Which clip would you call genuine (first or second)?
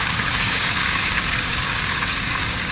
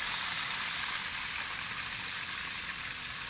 second